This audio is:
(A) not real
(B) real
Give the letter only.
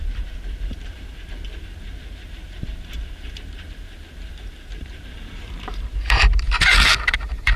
A